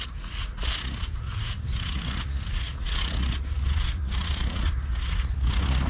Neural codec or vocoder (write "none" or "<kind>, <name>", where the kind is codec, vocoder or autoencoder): vocoder, Vocos